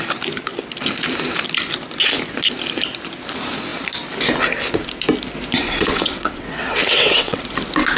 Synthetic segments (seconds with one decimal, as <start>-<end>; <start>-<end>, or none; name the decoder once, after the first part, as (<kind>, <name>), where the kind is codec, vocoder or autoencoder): 5.6-7.4 (vocoder, WaveNeXt)